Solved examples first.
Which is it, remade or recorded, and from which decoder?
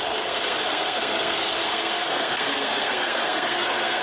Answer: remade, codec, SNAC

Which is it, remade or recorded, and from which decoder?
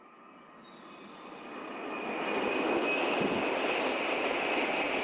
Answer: recorded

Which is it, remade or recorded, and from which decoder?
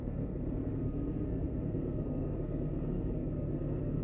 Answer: remade, codec, SNAC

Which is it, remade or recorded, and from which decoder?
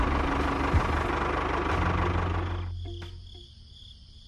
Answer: recorded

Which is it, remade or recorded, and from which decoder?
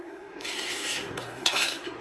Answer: remade, codec, SNAC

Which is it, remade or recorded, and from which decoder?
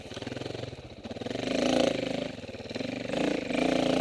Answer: recorded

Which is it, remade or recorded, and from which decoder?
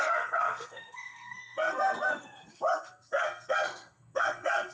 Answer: remade, codec, SNAC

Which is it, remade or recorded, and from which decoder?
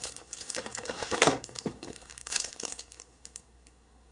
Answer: remade, codec, SNAC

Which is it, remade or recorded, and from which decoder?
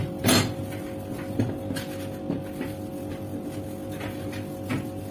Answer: recorded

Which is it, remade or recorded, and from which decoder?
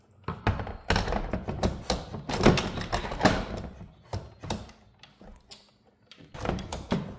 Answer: recorded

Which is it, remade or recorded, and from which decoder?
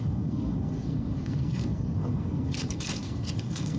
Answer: remade, codec, SNAC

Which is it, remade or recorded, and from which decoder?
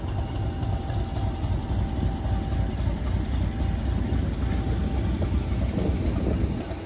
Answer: recorded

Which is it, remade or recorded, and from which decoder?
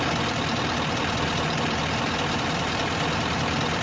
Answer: recorded